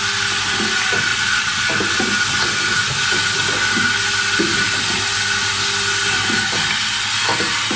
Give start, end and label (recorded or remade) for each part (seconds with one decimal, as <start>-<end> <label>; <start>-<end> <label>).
0.0-1.1 recorded; 1.1-1.7 remade; 1.7-7.8 recorded